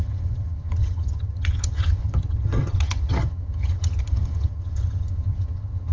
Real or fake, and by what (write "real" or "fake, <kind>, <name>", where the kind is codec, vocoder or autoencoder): fake, vocoder, HiFi-GAN